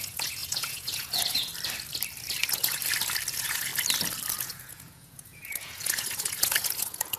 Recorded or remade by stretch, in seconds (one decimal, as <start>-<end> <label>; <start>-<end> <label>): 0.0-1.5 remade; 1.5-2.4 recorded; 2.4-2.8 remade; 2.8-3.3 recorded; 3.3-3.7 remade; 3.7-4.4 recorded; 4.4-7.2 remade